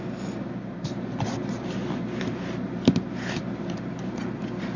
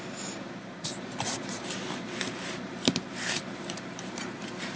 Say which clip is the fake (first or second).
second